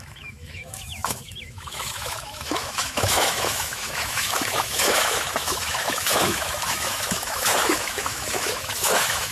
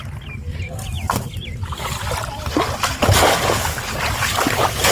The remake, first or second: first